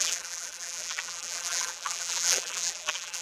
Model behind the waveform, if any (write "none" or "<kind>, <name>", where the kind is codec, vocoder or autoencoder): vocoder, BigVGAN v2